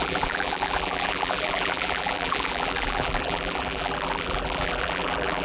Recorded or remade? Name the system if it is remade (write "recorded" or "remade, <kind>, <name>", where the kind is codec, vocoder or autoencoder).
remade, vocoder, BigVGAN v2